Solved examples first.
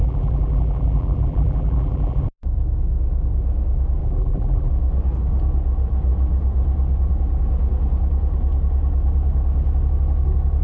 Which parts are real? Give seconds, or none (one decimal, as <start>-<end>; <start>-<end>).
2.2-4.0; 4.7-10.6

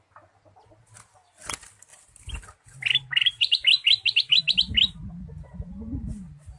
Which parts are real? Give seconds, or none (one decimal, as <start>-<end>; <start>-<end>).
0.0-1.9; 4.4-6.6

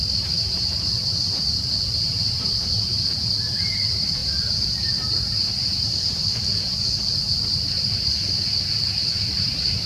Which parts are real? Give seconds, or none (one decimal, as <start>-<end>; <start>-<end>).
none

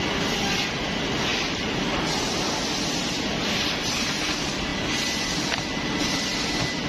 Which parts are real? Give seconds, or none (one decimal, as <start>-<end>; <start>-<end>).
0.0-6.9